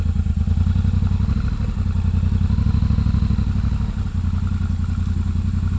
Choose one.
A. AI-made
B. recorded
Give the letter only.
B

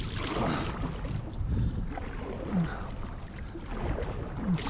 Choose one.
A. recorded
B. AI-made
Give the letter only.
A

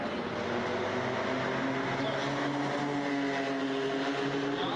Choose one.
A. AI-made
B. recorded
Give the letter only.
B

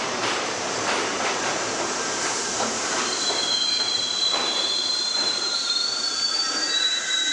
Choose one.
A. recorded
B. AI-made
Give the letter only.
B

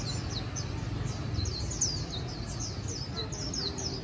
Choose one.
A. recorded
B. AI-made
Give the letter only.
A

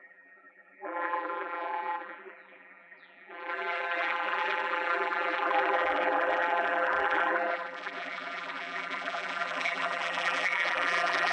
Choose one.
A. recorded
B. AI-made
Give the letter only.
B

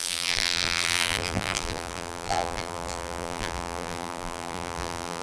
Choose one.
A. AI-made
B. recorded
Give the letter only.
A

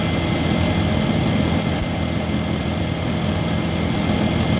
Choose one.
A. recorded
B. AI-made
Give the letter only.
A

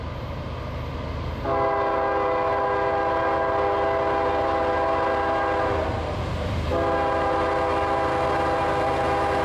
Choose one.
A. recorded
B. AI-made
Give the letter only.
A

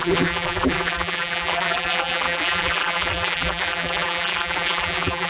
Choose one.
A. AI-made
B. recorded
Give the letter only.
A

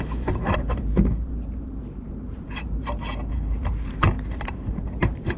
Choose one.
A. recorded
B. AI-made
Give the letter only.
B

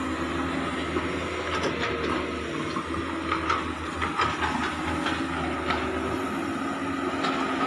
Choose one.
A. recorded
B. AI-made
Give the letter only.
A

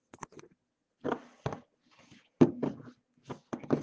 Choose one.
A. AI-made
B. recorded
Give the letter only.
B